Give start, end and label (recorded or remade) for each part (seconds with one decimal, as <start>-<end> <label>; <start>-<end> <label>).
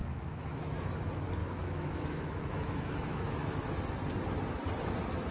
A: 0.0-0.9 remade; 0.9-1.4 recorded; 1.4-3.7 remade; 3.7-5.3 recorded